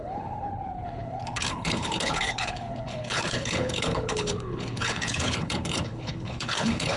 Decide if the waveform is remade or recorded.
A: remade